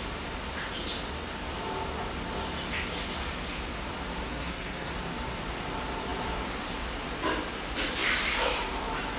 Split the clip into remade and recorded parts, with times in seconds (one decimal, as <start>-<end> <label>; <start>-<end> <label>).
0.0-4.3 recorded; 4.3-4.9 remade; 4.9-9.2 recorded